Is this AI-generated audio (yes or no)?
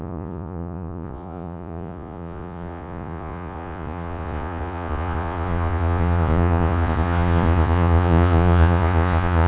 yes